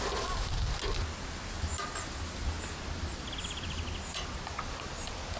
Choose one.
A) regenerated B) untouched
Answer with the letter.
B